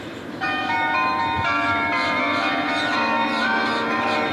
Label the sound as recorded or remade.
remade